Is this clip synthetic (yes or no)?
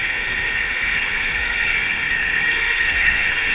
yes